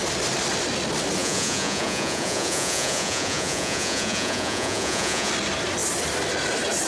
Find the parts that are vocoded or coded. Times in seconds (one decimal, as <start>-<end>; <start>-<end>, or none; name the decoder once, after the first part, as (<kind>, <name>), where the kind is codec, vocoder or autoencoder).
1.2-5.3 (vocoder, Vocos)